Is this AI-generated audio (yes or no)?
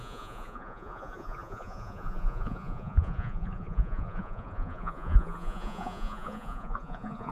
yes